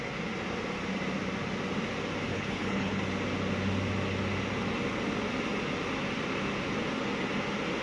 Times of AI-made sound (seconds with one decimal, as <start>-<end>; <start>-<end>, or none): 2.3-3.0